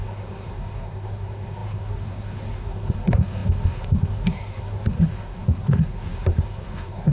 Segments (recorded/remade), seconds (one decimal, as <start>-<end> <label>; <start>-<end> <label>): 0.0-7.1 remade